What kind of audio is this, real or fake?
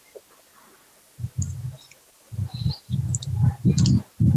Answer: real